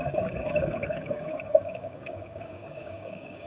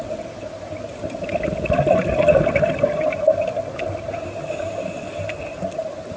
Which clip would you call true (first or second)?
second